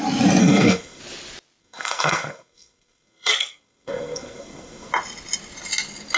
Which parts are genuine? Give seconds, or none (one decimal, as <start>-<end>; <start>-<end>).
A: 0.0-0.4; 1.0-1.6; 4.9-6.2